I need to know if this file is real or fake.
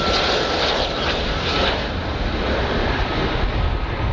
real